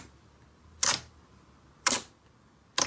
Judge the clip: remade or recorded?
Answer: recorded